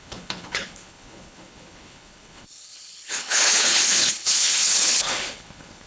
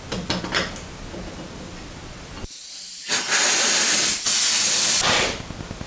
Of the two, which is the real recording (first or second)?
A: second